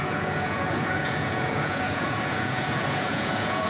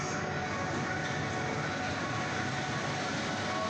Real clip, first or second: second